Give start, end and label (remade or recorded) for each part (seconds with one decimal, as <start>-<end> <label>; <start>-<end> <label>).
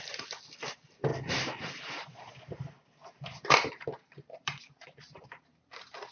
0.0-1.1 recorded; 1.1-2.2 remade; 2.2-4.0 recorded; 4.0-5.2 remade; 5.2-6.1 recorded